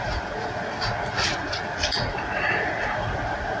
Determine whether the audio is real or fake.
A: fake